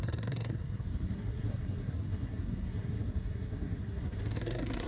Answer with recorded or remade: remade